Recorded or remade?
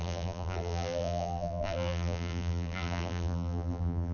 remade